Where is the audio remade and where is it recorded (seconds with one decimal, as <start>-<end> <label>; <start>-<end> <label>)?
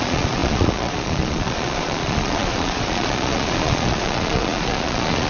0.0-5.3 remade